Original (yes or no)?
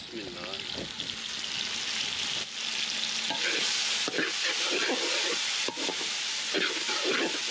yes